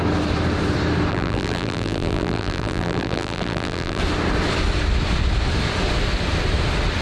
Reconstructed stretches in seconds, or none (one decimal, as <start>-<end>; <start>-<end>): 1.1-4.0